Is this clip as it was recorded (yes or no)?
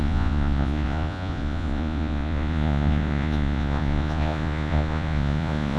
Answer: no